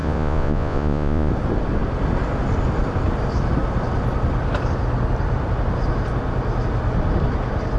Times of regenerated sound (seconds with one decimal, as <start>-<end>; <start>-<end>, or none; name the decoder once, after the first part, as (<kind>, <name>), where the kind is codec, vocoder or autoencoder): 0.0-1.3 (vocoder, Vocos)

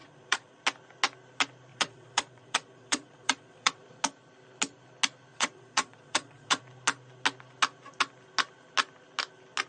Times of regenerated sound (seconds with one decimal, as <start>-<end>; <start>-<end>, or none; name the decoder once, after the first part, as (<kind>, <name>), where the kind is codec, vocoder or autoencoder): 0.0-0.6 (vocoder, Vocos); 1.7-3.8; 5.3-6.6

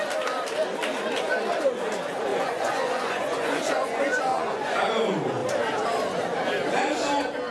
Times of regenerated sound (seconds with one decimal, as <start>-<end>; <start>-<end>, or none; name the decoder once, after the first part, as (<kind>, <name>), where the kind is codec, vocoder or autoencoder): 2.3-4.9 (vocoder, Vocos)

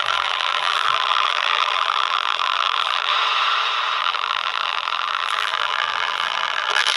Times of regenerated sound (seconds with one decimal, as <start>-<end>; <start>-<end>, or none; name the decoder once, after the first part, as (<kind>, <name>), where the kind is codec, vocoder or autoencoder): 0.0-3.1 (vocoder, BigVGAN v2); 4.0-7.0

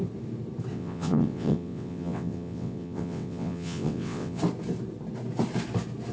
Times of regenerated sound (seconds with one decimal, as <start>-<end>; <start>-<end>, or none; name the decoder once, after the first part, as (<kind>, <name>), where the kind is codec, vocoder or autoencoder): 0.7-4.4 (vocoder, WaveNeXt)

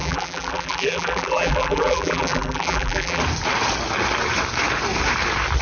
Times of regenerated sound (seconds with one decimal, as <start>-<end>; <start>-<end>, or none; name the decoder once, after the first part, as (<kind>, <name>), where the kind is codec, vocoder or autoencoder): 0.0-3.2 (vocoder, BigVGAN v2)